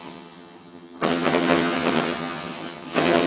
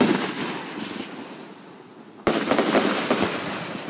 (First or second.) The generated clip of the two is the first